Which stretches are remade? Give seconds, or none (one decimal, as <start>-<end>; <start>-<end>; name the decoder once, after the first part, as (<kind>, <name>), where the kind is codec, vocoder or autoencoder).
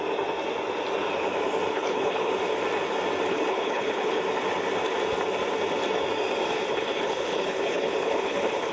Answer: 1.7-2.3 (codec, HILCodec); 3.3-4.2; 6.5-8.7